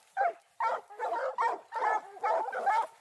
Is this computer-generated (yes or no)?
no